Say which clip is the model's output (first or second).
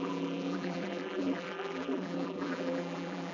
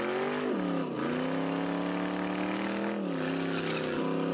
first